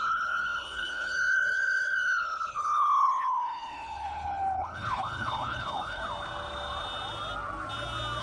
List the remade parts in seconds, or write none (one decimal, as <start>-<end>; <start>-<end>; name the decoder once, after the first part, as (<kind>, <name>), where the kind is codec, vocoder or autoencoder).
0.0-6.0 (codec, HILCodec)